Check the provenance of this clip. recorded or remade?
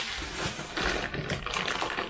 recorded